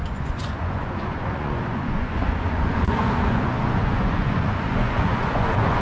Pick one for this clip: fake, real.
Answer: fake